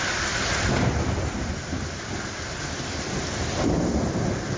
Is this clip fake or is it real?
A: fake